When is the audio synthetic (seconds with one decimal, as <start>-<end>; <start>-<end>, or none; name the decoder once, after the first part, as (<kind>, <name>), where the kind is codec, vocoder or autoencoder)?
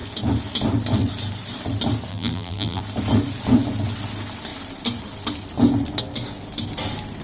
2.1-2.8 (vocoder, BigVGAN v2)